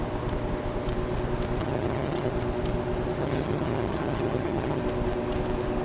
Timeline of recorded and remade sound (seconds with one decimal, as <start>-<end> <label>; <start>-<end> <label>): 0.0-1.6 recorded; 1.6-2.3 remade; 2.3-3.2 recorded; 3.2-4.8 remade; 4.8-5.8 recorded